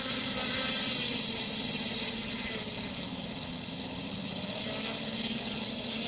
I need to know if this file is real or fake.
real